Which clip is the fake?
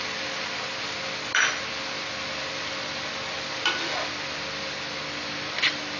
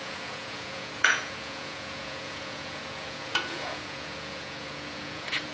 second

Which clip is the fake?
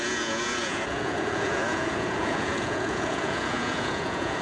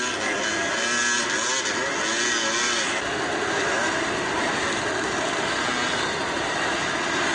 first